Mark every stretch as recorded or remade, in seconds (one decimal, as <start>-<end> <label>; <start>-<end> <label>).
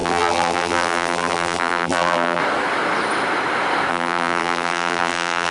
0.0-2.4 remade; 2.4-3.9 recorded; 3.9-5.5 remade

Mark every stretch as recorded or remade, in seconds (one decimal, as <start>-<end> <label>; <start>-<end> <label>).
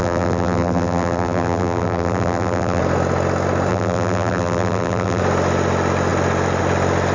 0.0-2.8 remade; 2.8-3.7 recorded; 3.7-5.2 remade; 5.2-7.1 recorded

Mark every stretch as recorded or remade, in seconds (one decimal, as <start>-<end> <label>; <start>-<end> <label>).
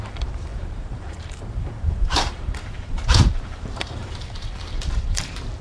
0.0-5.6 remade